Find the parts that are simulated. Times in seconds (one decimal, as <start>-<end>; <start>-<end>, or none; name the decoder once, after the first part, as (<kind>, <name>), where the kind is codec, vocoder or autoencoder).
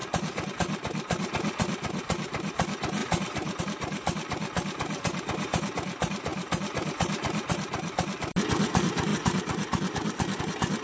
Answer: 0.0-0.5 (vocoder, BigVGAN v2); 3.0-3.6; 9.1-10.4